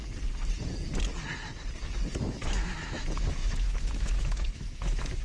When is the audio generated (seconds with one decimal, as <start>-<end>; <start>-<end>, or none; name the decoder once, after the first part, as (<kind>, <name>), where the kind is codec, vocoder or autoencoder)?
2.2-5.2 (autoencoder, DAC-VAE)